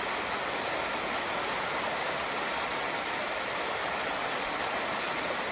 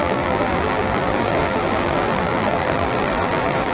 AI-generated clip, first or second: second